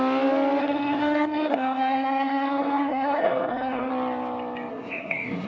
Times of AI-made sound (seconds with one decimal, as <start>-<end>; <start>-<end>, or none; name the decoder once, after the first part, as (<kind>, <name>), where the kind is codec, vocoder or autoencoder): 0.6-3.9 (codec, SNAC); 4.7-5.5